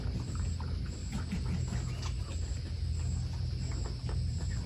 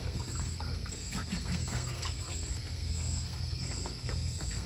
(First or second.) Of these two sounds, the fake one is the second